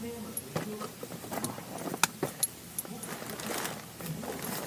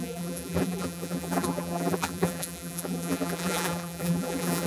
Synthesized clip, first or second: second